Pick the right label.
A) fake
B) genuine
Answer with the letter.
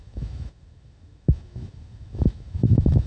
A